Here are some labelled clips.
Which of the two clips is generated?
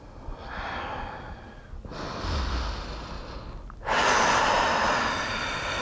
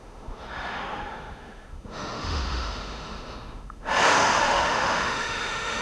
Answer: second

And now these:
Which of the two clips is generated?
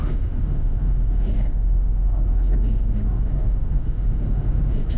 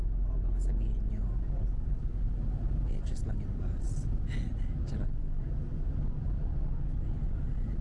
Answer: first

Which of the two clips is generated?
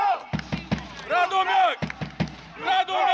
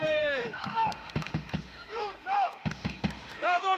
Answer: second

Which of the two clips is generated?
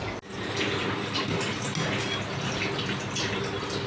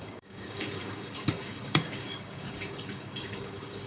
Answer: second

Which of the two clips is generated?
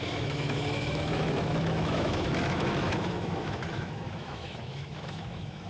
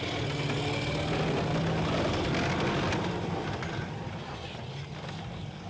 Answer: first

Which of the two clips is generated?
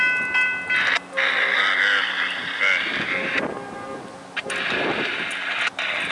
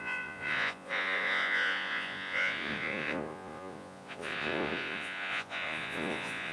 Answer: second